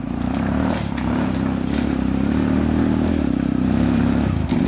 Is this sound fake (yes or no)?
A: yes